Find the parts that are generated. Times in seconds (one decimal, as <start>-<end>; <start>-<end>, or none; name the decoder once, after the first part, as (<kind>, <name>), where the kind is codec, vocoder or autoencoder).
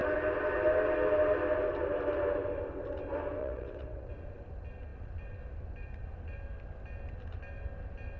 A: 3.4-4.1 (vocoder, WaveNeXt)